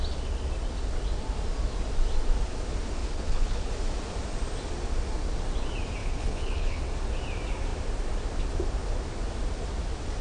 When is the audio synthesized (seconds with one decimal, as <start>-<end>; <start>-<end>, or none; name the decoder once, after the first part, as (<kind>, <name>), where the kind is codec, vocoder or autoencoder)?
3.0-3.7 (codec, HILCodec); 6.0-6.8